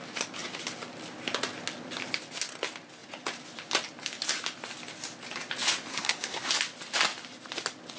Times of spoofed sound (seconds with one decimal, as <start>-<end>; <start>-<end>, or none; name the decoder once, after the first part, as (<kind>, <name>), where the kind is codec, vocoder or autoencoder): 5.9-6.5 (codec, SNAC)